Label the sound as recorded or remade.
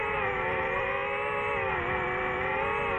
recorded